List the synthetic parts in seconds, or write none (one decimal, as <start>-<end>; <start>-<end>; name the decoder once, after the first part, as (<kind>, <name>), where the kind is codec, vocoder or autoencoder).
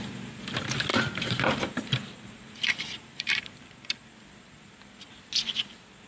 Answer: 0.9-3.4 (vocoder, BigVGAN v2)